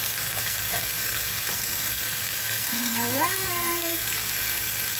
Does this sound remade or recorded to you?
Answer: remade